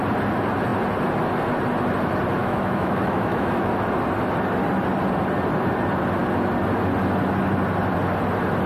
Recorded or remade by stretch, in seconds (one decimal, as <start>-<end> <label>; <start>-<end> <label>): 0.0-2.4 recorded; 2.4-3.7 remade; 3.7-8.7 recorded